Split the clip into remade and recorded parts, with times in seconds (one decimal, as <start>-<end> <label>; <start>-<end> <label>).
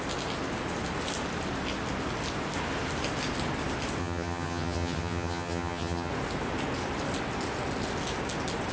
0.0-4.0 recorded; 4.0-6.1 remade; 6.1-8.7 recorded